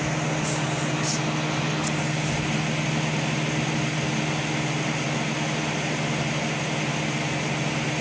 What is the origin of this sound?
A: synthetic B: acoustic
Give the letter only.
B